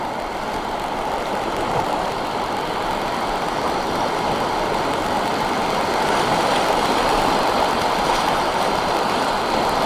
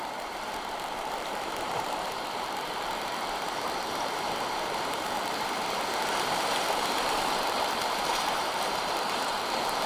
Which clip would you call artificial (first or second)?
second